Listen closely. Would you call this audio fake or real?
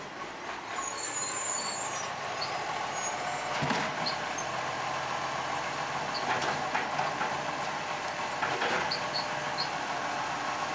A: real